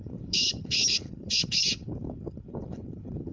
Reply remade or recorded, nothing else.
remade